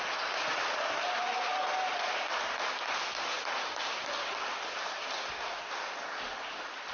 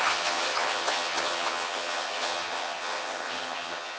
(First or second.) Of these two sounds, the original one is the first